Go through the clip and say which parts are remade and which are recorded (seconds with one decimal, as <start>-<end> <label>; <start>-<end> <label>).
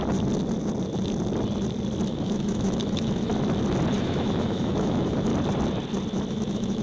0.0-2.1 recorded; 2.1-3.3 remade; 3.3-3.9 recorded; 3.9-5.3 remade; 5.3-6.3 recorded; 6.3-6.8 remade